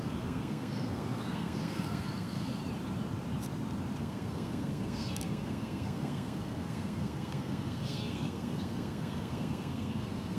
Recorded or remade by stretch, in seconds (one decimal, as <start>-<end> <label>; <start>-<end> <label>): 0.0-2.6 remade; 2.6-4.0 recorded; 4.0-10.4 remade